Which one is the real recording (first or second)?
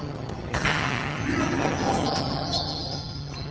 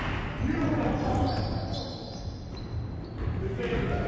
second